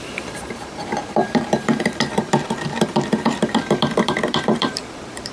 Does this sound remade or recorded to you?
remade